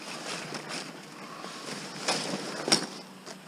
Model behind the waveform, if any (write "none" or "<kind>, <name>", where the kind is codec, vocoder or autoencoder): none